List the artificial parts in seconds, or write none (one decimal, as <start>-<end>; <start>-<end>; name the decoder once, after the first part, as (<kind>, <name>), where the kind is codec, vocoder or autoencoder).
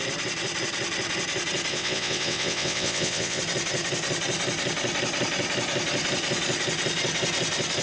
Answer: 1.7-3.4 (vocoder, WaveNeXt)